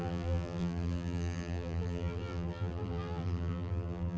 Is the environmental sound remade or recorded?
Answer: remade